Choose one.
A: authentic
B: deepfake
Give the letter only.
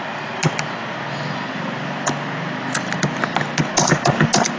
A